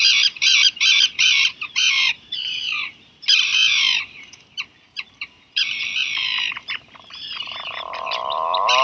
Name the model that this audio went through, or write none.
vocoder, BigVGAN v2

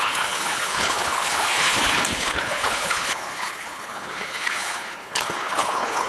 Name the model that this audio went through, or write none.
codec, HILCodec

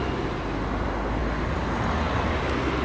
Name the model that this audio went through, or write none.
none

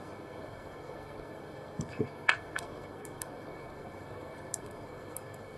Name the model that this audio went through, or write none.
codec, SNAC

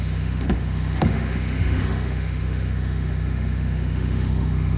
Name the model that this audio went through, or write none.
autoencoder, DAC-VAE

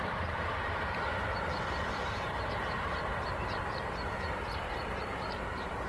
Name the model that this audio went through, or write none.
vocoder, BigVGAN v2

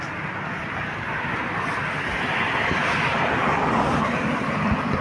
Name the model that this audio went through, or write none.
none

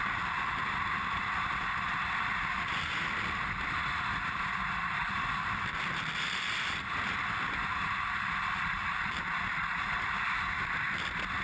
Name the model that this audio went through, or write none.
vocoder, BigVGAN v2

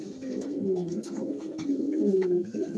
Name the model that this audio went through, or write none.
codec, SNAC